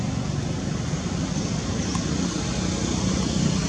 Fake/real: real